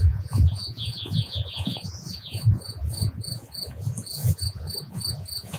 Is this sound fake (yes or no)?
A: yes